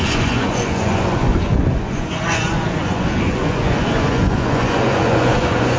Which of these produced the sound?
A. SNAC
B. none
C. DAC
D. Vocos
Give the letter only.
D